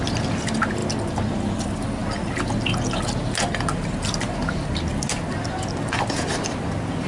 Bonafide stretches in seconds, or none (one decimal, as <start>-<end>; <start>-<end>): 0.0-7.1